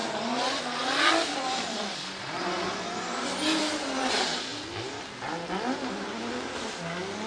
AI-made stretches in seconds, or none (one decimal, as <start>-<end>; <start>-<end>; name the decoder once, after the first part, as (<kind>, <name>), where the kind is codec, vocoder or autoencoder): none